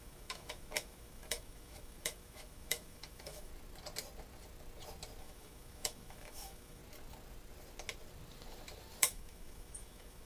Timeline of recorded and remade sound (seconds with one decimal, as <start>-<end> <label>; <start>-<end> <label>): 0.0-3.5 remade; 3.5-5.2 recorded; 5.2-6.8 remade; 6.8-9.0 recorded; 9.0-10.3 remade